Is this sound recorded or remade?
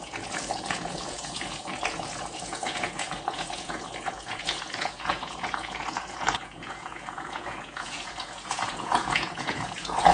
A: remade